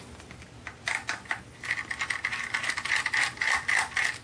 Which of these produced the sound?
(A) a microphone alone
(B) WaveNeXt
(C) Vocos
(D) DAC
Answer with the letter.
A